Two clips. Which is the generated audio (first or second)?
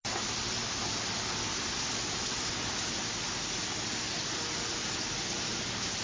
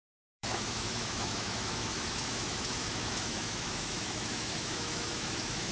second